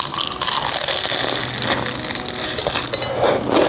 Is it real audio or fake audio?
real